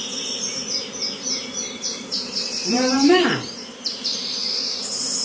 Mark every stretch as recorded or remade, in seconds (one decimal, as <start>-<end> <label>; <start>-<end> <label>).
0.0-1.4 recorded; 1.4-4.2 remade; 4.2-5.2 recorded